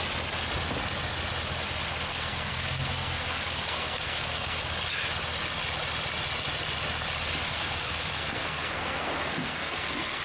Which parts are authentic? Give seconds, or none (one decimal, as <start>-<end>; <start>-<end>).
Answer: 0.0-2.1; 4.6-7.5